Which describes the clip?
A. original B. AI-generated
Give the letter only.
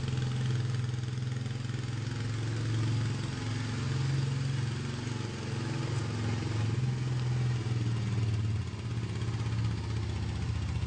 A